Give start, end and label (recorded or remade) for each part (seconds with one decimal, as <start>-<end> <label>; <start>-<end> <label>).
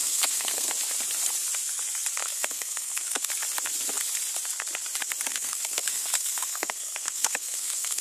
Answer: 0.0-0.7 remade; 0.7-2.2 recorded; 2.2-3.3 remade; 3.3-5.3 recorded; 5.3-8.0 remade